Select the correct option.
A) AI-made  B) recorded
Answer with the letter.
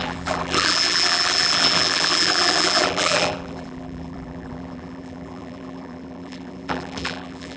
A